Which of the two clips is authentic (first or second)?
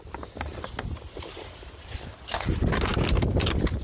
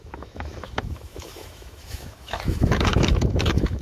first